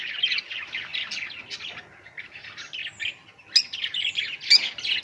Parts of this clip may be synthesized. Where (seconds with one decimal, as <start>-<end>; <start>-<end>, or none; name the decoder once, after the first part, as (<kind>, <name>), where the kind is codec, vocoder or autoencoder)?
0.0-0.9 (vocoder, BigVGAN v2); 2.2-2.8